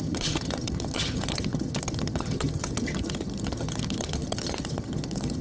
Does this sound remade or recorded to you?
remade